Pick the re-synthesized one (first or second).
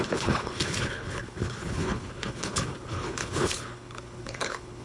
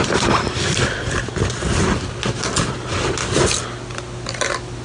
first